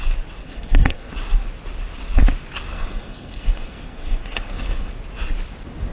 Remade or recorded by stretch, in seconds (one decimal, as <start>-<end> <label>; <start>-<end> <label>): 0.0-0.4 recorded; 0.4-1.1 remade; 1.1-2.7 recorded; 2.7-4.9 remade; 4.9-5.9 recorded